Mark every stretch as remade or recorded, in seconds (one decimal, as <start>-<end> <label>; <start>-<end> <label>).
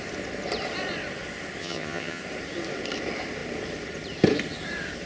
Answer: 0.0-1.6 recorded; 1.6-2.2 remade; 2.2-5.1 recorded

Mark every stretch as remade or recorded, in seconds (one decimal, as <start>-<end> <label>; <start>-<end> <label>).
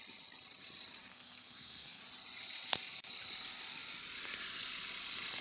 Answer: 0.0-1.1 recorded; 1.1-2.0 remade; 2.0-5.4 recorded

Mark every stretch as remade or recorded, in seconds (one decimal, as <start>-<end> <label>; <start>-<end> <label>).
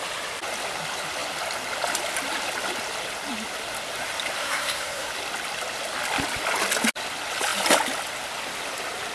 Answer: 0.0-4.4 recorded; 4.4-5.1 remade; 5.1-9.1 recorded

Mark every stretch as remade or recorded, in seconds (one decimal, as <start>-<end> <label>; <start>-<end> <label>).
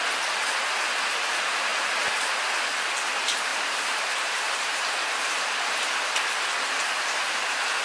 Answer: 0.0-1.7 recorded; 1.7-2.4 remade; 2.4-3.5 recorded; 3.5-5.7 remade; 5.7-7.8 recorded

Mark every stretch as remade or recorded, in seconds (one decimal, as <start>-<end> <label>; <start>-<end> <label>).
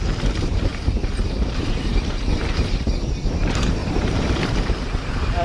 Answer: 0.0-5.4 remade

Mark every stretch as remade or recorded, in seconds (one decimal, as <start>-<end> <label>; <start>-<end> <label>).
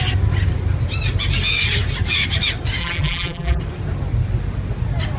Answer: 0.0-2.8 recorded; 2.8-3.6 remade; 3.6-5.2 recorded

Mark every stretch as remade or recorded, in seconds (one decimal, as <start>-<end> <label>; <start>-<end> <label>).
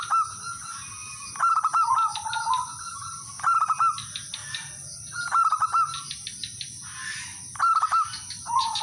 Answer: 0.0-8.8 recorded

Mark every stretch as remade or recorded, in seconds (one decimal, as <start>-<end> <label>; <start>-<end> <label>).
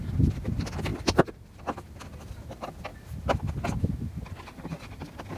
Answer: 0.0-5.4 recorded